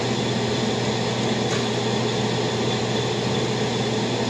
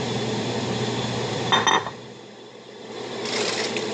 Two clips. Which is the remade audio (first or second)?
second